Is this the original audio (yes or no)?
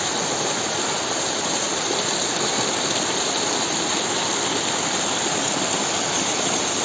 yes